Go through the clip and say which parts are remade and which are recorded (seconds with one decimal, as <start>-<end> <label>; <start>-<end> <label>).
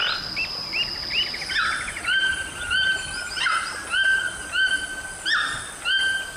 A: 0.0-6.4 recorded